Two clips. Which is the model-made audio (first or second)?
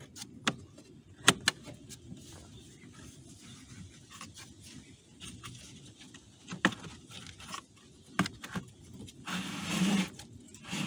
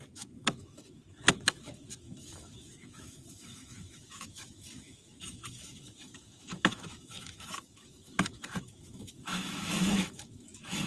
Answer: second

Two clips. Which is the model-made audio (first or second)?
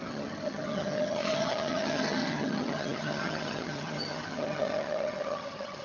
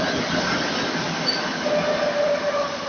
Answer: first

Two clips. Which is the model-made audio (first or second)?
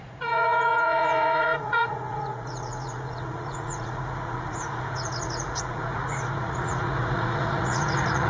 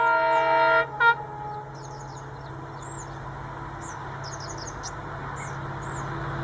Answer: first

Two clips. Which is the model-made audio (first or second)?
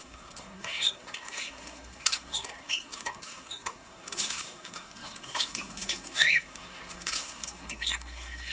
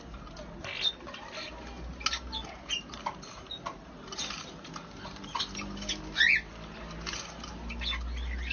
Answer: first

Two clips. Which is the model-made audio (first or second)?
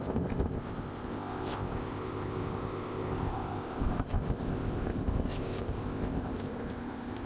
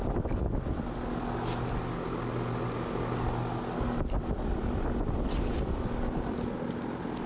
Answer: first